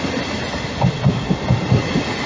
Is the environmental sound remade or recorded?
recorded